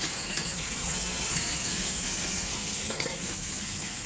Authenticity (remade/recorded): remade